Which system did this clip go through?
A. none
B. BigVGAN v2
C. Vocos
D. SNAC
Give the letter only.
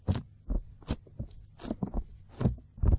A